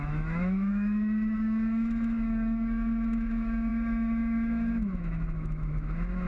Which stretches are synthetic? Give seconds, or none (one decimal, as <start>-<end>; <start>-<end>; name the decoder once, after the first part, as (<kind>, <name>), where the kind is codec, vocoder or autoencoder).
0.0-6.3 (autoencoder, DAC-VAE)